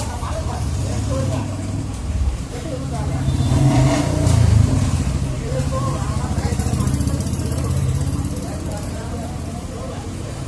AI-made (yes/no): yes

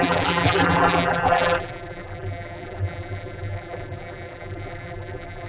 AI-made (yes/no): yes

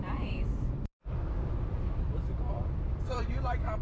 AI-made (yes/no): yes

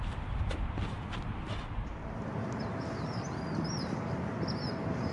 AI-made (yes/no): no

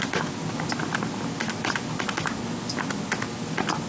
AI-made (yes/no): no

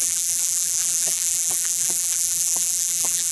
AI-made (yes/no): yes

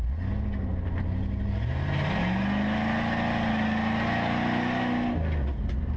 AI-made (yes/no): no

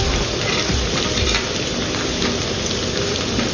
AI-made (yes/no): no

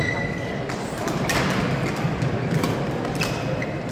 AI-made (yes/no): yes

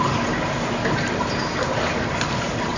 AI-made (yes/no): no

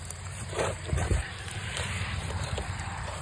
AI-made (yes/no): yes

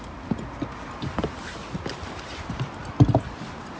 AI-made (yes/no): no